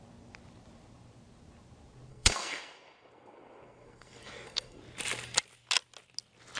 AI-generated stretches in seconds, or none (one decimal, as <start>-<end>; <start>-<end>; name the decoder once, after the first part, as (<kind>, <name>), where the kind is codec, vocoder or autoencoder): 2.1-4.8 (codec, SNAC)